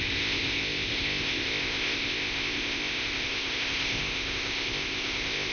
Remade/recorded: remade